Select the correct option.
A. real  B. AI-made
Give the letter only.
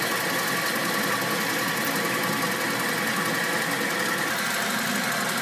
A